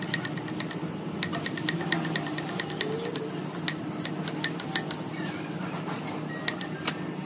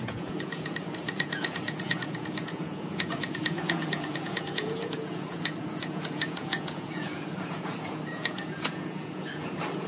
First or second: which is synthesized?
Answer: second